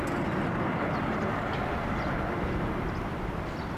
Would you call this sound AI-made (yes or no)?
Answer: no